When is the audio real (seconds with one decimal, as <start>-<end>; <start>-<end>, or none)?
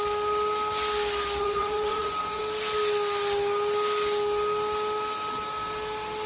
0.0-1.4; 2.4-6.3